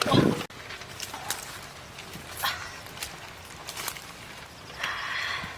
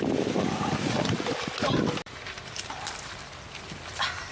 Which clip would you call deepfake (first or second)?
second